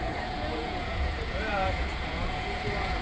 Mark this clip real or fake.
fake